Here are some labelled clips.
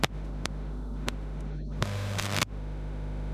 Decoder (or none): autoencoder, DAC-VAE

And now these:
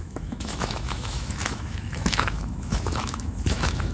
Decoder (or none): autoencoder, DAC-VAE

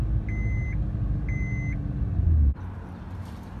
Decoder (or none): none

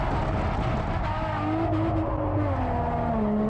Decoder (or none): none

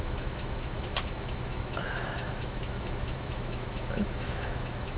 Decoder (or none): autoencoder, DAC-VAE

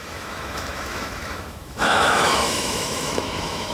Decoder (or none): autoencoder, DAC-VAE